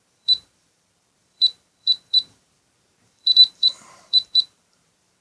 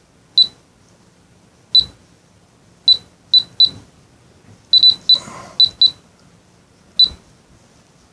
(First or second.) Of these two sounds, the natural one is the second